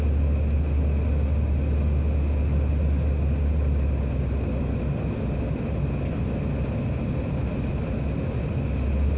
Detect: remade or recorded recorded